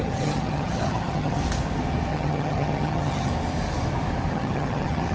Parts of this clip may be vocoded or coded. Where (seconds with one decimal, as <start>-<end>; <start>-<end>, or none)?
0.0-1.4; 2.1-3.3; 4.3-5.1